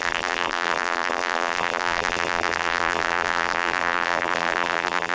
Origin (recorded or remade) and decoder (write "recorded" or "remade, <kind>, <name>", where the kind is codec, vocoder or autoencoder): remade, vocoder, BigVGAN v2